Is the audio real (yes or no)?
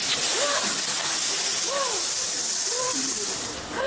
yes